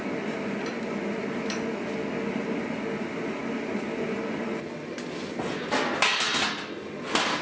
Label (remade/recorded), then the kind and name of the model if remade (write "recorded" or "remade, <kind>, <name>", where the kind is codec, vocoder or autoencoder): recorded